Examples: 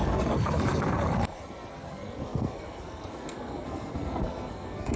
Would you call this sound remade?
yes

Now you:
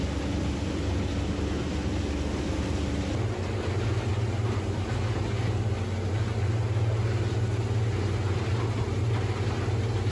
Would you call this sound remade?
no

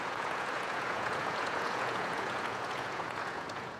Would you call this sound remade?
yes